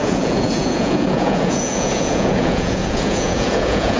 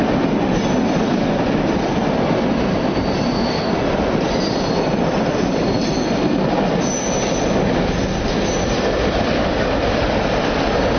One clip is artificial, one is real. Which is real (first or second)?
second